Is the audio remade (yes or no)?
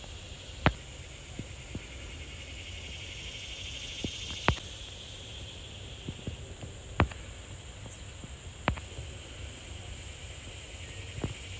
no